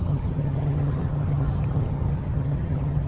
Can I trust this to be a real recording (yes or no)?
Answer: no